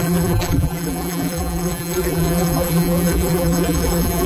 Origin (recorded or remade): remade